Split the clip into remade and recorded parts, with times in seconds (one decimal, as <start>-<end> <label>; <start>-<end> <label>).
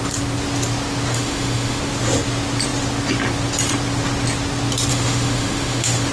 0.0-1.1 recorded; 1.1-1.8 remade; 1.8-4.9 recorded; 4.9-6.1 remade